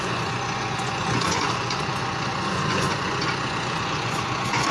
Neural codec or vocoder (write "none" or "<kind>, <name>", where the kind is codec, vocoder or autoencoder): vocoder, Vocos